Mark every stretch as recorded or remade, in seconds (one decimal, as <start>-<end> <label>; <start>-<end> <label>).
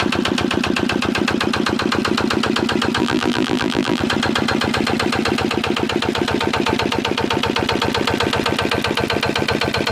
0.0-3.0 recorded; 3.0-4.0 remade; 4.0-9.9 recorded